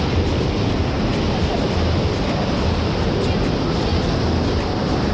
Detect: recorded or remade recorded